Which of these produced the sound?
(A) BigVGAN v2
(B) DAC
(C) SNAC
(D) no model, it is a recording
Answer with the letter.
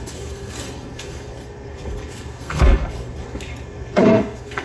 C